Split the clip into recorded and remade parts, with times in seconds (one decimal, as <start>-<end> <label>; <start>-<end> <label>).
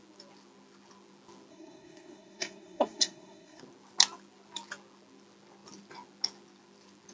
0.0-1.5 recorded; 1.5-3.6 remade; 3.6-7.1 recorded